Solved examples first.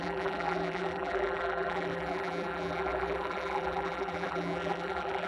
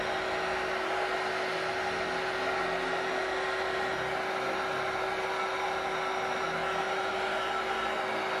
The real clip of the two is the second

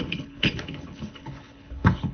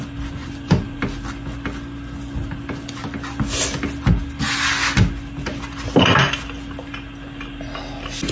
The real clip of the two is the second